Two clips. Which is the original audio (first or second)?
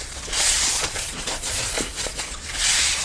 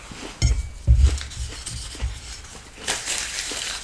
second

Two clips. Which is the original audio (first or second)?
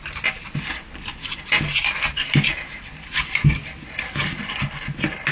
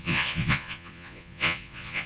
first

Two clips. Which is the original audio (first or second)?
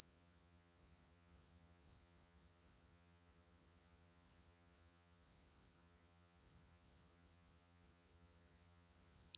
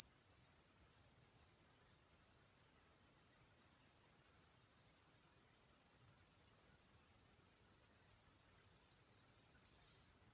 second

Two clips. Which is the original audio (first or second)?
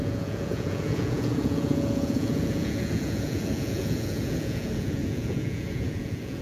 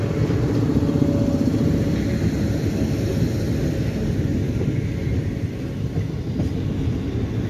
second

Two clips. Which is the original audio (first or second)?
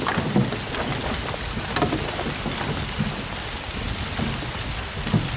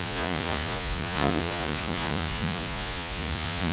first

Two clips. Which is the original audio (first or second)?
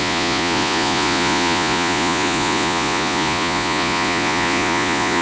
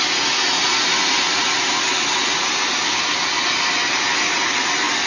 second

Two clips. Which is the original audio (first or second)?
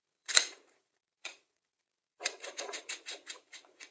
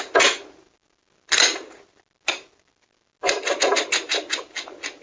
second